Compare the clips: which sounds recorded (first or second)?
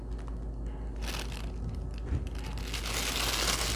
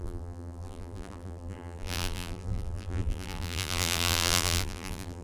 first